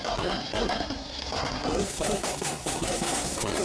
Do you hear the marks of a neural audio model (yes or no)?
yes